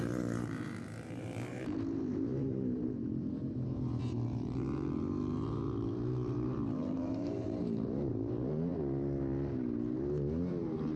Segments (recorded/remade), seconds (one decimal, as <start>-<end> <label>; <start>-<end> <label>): 0.0-8.7 remade; 8.7-10.6 recorded; 10.6-11.0 remade